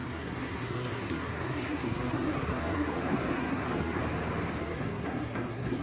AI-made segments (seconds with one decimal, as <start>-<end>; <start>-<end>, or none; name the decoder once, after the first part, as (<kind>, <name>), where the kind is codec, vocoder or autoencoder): 0.0-4.0 (codec, SNAC); 4.6-5.8